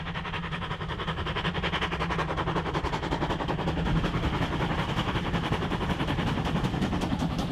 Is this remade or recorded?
recorded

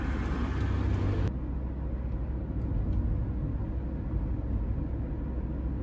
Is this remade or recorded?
recorded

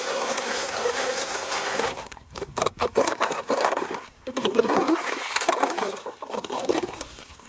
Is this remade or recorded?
remade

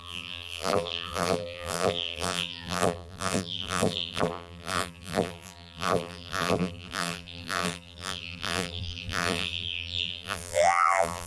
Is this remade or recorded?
remade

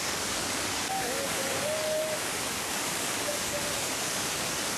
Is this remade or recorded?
remade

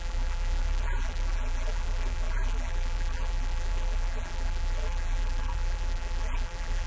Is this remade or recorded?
remade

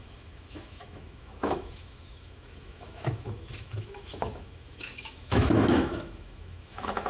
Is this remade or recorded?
remade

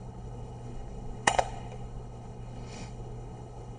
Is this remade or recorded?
remade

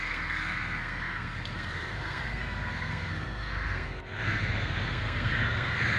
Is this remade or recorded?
remade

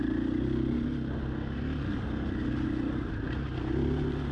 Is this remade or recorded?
recorded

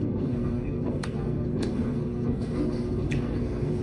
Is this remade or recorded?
remade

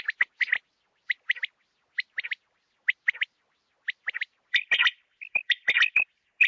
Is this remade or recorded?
recorded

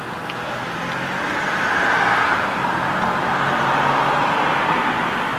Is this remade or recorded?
recorded